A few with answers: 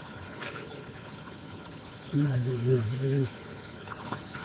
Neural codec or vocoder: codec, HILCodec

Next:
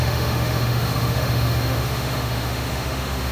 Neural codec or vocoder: autoencoder, DAC-VAE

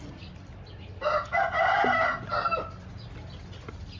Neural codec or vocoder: none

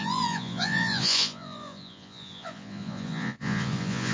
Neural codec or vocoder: vocoder, Vocos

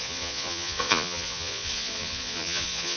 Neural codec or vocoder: vocoder, Vocos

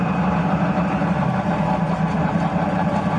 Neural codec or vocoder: vocoder, BigVGAN v2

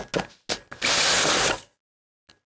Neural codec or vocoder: none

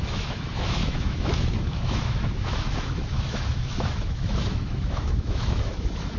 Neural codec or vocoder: autoencoder, DAC-VAE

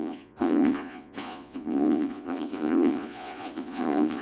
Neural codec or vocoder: vocoder, Vocos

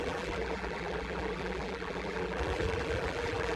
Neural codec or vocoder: vocoder, BigVGAN v2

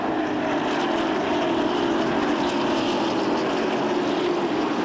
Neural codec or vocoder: none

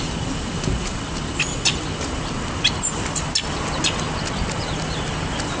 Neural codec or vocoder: none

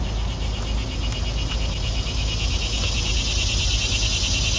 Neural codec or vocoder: none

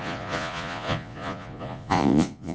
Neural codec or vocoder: vocoder, Vocos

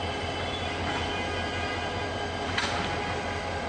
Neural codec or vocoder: none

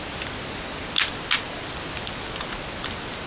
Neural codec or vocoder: none